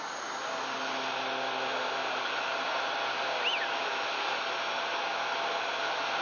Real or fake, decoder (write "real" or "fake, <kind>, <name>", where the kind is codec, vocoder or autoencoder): real